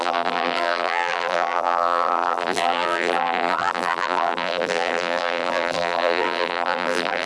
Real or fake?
fake